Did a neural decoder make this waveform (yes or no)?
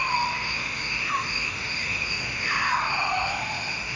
yes